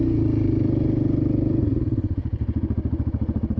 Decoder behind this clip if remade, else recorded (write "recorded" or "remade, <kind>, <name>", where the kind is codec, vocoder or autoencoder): remade, vocoder, BigVGAN v2